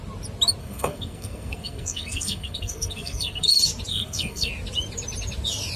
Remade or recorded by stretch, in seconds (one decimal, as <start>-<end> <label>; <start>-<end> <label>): 0.0-0.6 recorded; 0.6-3.5 remade; 3.5-3.9 recorded; 3.9-4.5 remade; 4.5-5.8 recorded